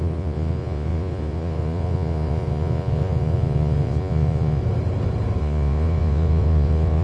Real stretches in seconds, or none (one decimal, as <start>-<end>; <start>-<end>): 4.6-5.4